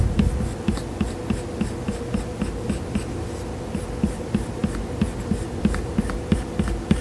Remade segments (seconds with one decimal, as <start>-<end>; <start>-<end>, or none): none